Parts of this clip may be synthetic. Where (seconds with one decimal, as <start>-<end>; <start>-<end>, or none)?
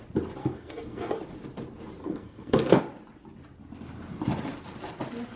0.4-1.2; 2.0-2.8